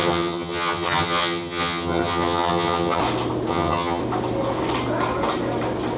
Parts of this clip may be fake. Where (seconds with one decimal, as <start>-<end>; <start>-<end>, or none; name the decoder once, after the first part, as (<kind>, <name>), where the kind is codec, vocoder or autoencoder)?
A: 0.0-3.0 (vocoder, HiFi-GAN); 3.5-4.0